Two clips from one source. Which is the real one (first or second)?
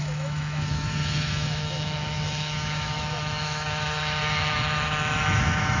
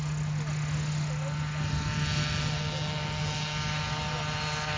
second